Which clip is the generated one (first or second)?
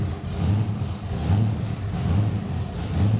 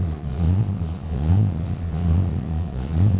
second